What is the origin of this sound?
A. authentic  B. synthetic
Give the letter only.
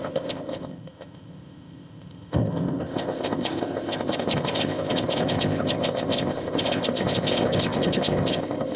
B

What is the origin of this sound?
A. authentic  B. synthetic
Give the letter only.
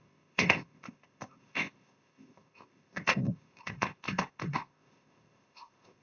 B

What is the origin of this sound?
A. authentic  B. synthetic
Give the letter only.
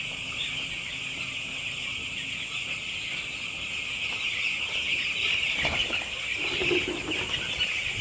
A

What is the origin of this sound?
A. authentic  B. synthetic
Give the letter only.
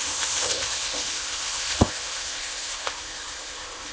B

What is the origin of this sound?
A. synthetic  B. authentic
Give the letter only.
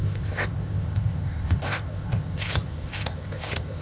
A